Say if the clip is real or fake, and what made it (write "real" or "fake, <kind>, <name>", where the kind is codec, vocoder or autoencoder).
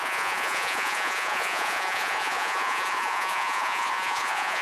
fake, vocoder, Vocos